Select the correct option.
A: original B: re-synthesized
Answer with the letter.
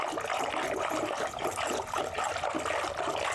A